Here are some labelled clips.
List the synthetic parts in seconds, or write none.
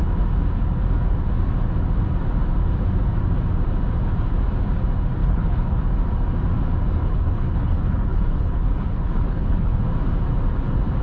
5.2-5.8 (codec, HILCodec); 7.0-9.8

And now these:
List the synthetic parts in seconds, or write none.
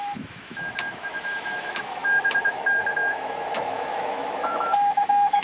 0.0-5.4 (autoencoder, DAC-VAE)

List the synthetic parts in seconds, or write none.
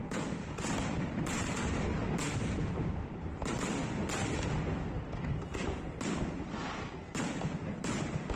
0.0-1.9 (vocoder, BigVGAN v2); 6.4-8.4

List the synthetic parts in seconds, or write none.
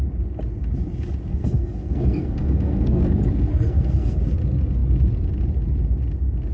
1.3-3.0 (codec, SNAC); 3.5-4.2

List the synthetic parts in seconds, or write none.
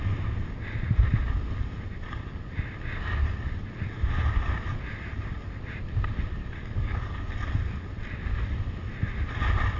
6.4-7.3 (codec, DAC)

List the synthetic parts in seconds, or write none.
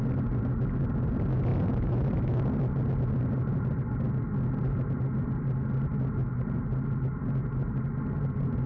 none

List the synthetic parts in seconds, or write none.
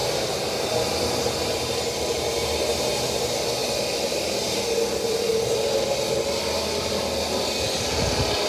none